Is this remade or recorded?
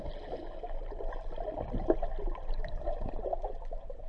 recorded